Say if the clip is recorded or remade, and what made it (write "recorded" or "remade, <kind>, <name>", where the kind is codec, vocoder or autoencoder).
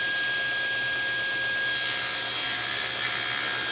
recorded